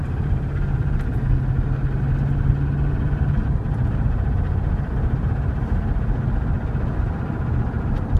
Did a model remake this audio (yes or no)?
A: no